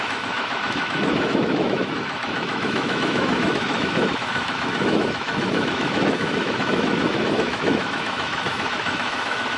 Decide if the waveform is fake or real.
fake